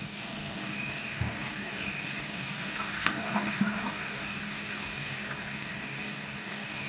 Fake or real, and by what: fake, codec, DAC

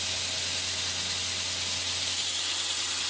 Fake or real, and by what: real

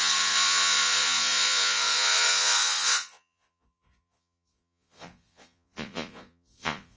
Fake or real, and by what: fake, vocoder, Vocos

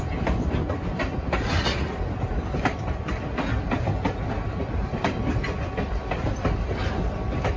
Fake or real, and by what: real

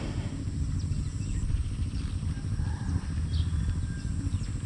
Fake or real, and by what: real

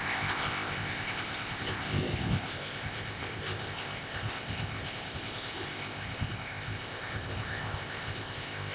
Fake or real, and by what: fake, codec, ZipCodec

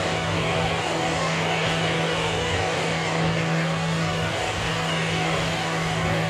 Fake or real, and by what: fake, codec, DAC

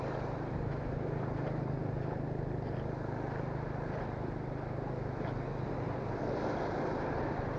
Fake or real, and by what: real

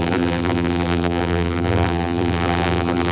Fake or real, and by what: fake, vocoder, BigVGAN v2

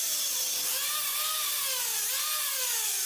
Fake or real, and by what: real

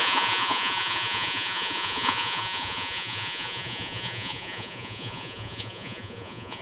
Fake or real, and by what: fake, vocoder, Vocos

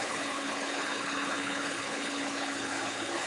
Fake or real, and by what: fake, codec, HILCodec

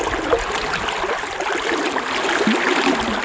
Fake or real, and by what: real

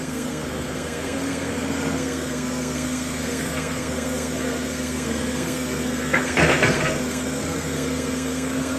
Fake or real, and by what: fake, codec, SNAC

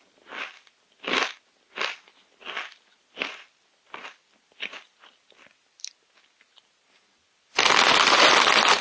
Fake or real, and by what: real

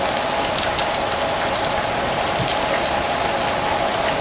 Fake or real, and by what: real